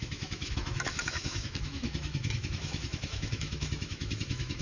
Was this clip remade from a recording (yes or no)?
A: yes